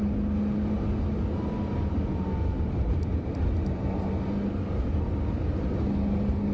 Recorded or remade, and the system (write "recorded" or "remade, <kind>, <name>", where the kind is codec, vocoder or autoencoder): recorded